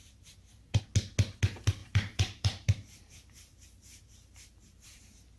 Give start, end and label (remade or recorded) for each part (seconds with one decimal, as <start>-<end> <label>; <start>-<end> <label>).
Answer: 0.0-0.8 remade; 0.8-1.8 recorded; 1.8-5.0 remade; 5.0-5.4 recorded